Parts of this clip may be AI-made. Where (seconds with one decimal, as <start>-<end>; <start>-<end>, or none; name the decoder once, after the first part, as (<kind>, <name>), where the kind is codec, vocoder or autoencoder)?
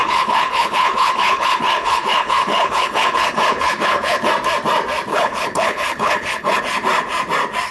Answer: 0.0-4.3 (codec, HILCodec); 5.1-6.6